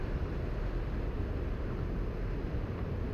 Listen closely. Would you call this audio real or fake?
real